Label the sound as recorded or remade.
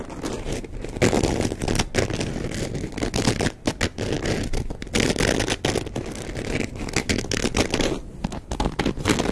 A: recorded